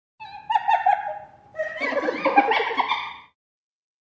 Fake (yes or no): no